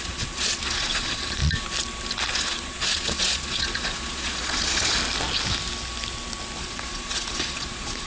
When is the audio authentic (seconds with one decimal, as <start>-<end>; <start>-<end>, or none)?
1.4-2.3; 5.0-6.6